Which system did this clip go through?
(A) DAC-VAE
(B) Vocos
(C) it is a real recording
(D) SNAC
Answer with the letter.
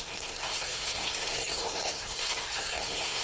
D